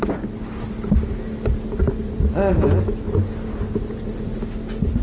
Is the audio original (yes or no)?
yes